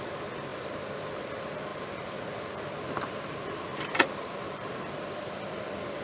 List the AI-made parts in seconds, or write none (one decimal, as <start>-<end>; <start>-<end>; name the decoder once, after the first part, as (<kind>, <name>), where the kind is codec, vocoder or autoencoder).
none